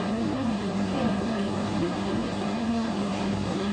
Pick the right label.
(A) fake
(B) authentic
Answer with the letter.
A